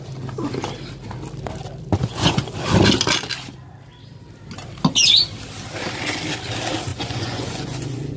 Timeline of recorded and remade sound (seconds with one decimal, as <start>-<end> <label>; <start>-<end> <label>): 0.0-2.0 recorded; 2.0-2.5 remade; 2.5-6.9 recorded; 6.9-8.2 remade